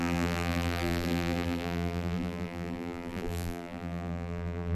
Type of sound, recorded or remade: remade